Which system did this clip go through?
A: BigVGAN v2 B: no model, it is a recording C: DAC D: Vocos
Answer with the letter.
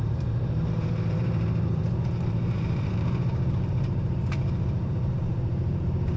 A